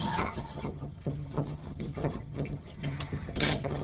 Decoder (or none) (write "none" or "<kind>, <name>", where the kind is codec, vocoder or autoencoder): vocoder, HiFi-GAN